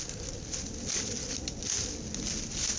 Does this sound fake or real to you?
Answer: real